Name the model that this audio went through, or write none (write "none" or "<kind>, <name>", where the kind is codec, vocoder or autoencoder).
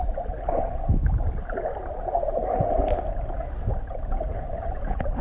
none